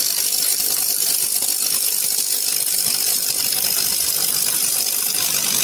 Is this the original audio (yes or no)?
yes